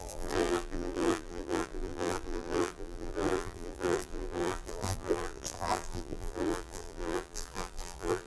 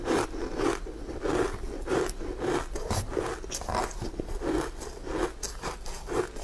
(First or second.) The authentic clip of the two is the second